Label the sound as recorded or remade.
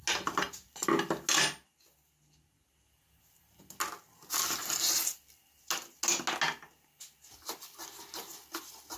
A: recorded